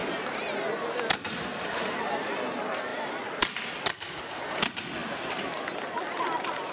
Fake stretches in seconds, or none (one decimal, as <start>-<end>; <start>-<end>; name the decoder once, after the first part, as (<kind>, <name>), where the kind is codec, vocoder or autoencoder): 2.9-4.2 (vocoder, BigVGAN v2)

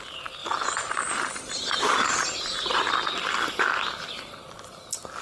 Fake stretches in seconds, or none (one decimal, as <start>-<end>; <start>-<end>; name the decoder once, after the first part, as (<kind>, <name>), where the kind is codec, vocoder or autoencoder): 0.4-2.9 (vocoder, BigVGAN v2)

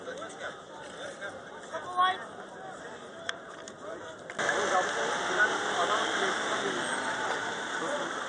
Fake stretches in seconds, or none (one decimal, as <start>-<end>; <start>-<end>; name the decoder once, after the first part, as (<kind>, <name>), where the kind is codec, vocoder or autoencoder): 3.0-4.0 (vocoder, BigVGAN v2); 5.8-8.3

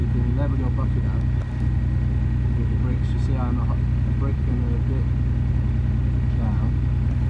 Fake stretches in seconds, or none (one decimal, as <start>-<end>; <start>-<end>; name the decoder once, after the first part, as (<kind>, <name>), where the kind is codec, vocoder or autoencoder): 4.3-5.5 (vocoder, BigVGAN v2)